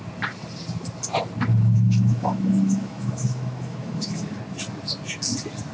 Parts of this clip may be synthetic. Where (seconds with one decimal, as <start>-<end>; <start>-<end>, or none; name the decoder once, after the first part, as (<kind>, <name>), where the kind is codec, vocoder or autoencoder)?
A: 1.5-4.4 (autoencoder, DAC-VAE)